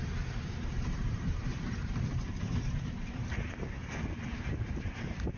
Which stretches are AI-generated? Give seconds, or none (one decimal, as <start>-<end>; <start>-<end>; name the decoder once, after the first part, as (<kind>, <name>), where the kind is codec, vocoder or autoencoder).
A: 0.7-3.9 (vocoder, BigVGAN v2); 4.3-5.4